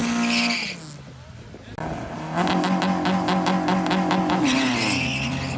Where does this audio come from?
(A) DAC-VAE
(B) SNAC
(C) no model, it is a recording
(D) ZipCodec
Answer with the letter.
C